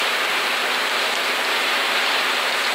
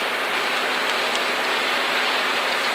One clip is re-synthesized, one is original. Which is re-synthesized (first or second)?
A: first